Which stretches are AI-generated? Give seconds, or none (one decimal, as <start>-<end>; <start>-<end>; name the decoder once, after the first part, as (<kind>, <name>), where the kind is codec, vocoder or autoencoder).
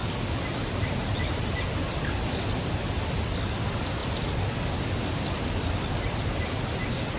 none